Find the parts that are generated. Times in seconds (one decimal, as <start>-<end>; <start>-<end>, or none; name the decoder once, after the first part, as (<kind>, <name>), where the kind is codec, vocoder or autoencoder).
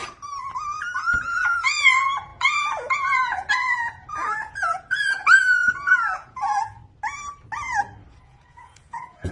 1.0-6.8 (vocoder, Vocos); 8.2-9.3